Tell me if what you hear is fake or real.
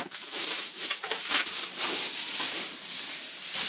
fake